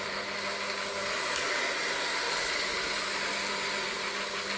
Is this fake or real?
real